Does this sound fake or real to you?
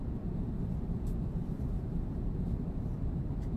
fake